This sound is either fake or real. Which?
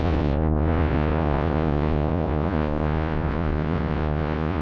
fake